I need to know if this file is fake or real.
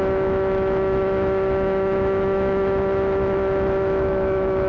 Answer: fake